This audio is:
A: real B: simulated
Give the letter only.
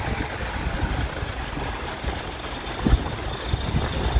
A